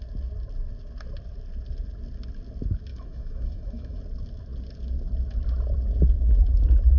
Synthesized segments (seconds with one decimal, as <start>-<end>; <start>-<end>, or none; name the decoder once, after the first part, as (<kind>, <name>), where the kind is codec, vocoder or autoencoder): 2.9-4.0 (autoencoder, DAC-VAE)